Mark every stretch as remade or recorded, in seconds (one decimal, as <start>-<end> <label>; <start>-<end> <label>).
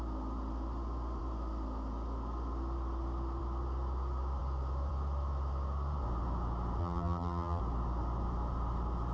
0.0-6.8 recorded; 6.8-7.6 remade; 7.6-9.1 recorded